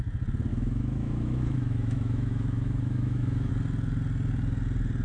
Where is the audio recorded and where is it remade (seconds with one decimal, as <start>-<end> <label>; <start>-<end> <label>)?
0.0-0.5 recorded; 0.5-3.5 remade; 3.5-5.0 recorded